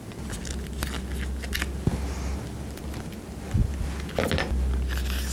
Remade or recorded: recorded